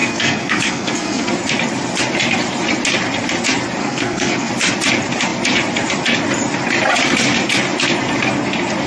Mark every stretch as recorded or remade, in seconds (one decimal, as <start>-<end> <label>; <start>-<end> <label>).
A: 0.0-1.3 remade; 1.3-3.8 recorded; 3.8-4.5 remade; 4.5-8.9 recorded